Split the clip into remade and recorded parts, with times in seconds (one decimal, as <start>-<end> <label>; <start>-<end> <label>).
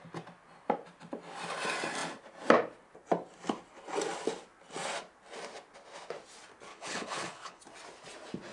0.0-6.7 recorded; 6.7-7.6 remade; 7.6-8.5 recorded